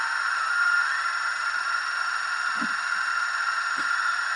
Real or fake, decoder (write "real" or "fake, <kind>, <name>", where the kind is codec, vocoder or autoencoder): real